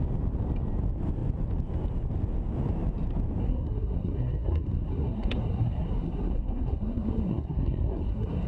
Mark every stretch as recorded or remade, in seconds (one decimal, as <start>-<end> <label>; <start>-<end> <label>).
0.0-3.4 recorded; 3.4-8.5 remade